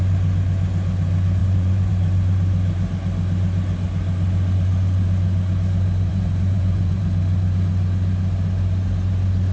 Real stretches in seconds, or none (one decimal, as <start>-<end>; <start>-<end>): 0.0-1.4; 1.9-6.1; 7.0-9.5